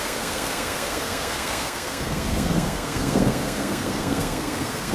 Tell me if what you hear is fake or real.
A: fake